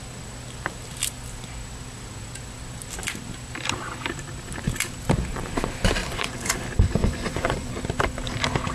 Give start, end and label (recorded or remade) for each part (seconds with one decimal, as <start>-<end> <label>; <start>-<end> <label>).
0.0-6.0 recorded; 6.0-6.6 remade; 6.6-7.0 recorded; 7.0-7.7 remade; 7.7-8.7 recorded